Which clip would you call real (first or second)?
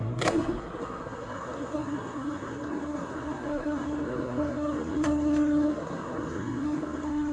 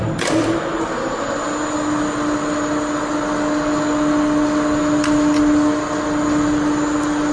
second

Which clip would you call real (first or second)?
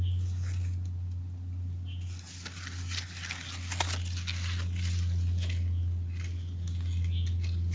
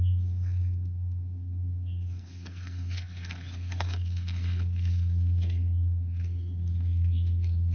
first